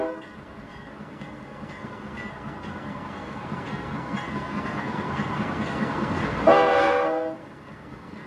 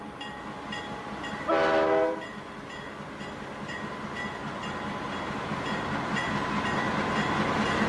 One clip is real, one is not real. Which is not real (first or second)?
first